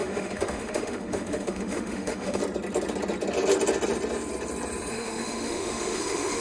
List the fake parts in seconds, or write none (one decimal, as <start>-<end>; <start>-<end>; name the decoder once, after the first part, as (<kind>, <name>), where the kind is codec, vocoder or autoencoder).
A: 0.0-2.4 (autoencoder, DAC-VAE); 4.9-6.4